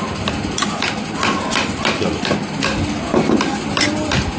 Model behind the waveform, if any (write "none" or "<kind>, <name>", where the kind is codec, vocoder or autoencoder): none